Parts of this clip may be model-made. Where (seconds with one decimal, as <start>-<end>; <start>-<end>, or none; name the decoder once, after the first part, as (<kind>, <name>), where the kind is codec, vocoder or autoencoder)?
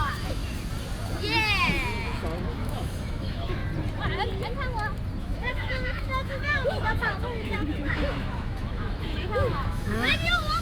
0.0-0.4 (autoencoder, DAC-VAE); 2.4-3.6; 5.2-10.6